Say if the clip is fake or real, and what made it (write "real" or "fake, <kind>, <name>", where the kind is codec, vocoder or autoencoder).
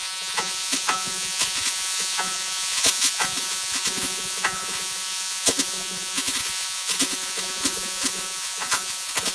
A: fake, vocoder, Vocos